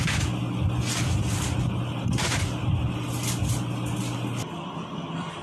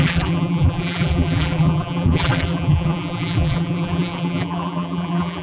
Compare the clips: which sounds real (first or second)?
first